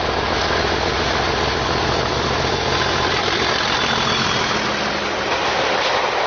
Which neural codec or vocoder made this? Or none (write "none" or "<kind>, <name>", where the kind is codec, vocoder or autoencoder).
none